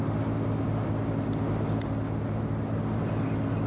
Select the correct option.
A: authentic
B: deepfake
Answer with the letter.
A